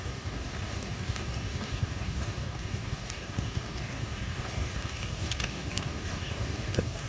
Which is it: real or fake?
fake